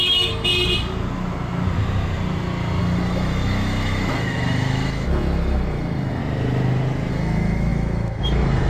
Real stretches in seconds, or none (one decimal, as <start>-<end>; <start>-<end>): 0.5-2.8; 6.2-7.1